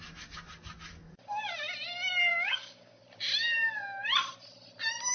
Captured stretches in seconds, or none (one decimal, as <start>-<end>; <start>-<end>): 0.0-2.3; 3.0-5.1